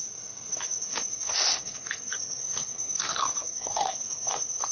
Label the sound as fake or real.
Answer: fake